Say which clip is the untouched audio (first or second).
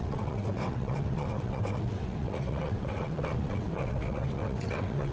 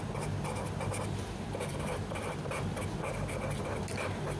second